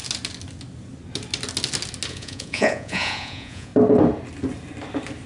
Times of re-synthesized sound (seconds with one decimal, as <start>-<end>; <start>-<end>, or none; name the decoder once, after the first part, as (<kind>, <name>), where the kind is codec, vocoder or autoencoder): 2.1-3.7 (vocoder, Vocos)